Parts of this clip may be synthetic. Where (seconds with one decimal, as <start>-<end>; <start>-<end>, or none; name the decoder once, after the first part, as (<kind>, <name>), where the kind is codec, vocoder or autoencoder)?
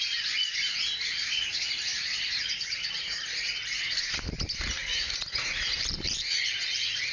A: 0.5-1.5 (vocoder, BigVGAN v2); 1.9-3.0